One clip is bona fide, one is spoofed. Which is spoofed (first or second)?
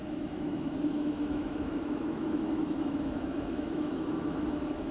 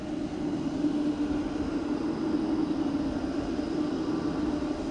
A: first